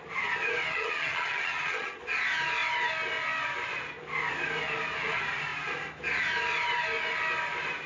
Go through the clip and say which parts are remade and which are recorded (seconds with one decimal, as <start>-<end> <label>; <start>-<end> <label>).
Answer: 0.0-0.7 recorded; 0.7-2.0 remade; 2.0-7.9 recorded